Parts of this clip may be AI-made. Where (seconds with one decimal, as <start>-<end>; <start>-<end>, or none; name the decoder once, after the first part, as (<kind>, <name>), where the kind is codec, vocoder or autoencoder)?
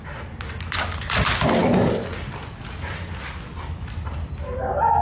none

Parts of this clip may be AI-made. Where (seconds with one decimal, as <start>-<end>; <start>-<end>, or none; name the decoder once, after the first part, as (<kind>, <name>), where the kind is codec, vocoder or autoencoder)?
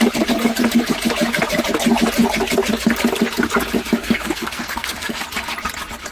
4.0-5.2 (codec, SNAC)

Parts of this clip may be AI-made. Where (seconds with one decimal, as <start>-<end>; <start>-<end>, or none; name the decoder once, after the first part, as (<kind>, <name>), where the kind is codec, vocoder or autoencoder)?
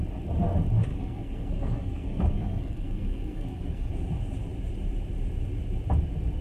0.9-3.9 (codec, SNAC)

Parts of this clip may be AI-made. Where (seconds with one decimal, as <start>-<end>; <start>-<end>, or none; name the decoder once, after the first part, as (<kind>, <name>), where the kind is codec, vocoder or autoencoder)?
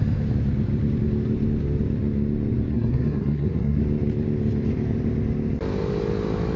2.7-3.8 (codec, SNAC)